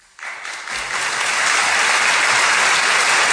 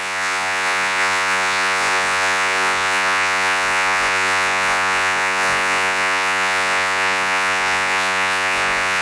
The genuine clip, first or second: first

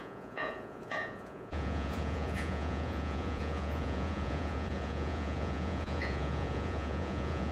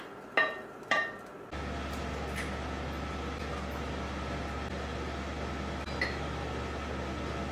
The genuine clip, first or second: second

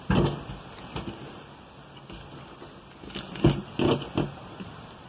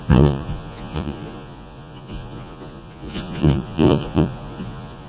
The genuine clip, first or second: first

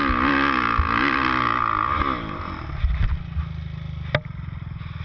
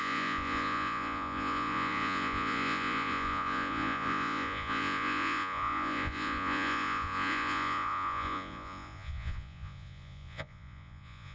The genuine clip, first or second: first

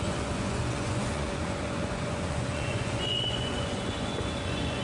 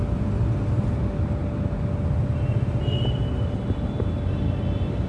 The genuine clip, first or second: second